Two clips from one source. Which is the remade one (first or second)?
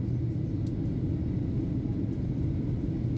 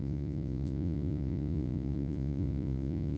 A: second